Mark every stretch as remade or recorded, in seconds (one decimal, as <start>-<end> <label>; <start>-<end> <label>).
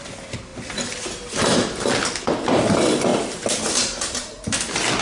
0.0-5.0 recorded